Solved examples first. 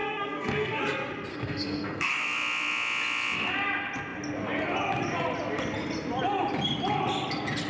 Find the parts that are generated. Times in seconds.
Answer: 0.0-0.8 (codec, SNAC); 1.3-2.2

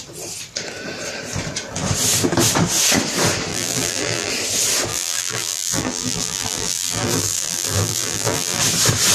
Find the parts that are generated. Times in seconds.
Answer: 3.5-4.3 (vocoder, BigVGAN v2); 4.9-8.6

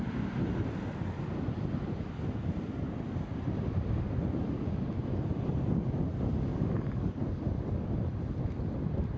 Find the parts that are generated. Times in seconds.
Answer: 6.5-7.2 (codec, DAC)

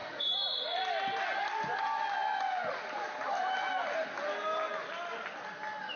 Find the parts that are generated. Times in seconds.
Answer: 0.0-0.8 (vocoder, Vocos)

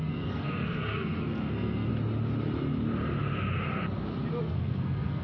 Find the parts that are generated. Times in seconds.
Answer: 0.0-1.9 (codec, SNAC); 4.4-5.2

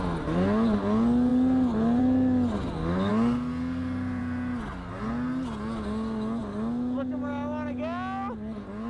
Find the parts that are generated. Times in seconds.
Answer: none

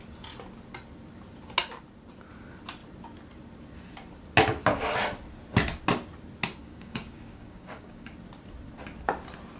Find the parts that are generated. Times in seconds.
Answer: 6.6-8.1 (codec, DAC)